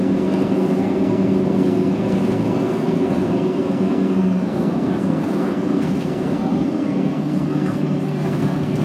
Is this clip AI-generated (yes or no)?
yes